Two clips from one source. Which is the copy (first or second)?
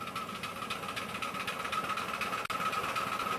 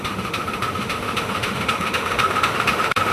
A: second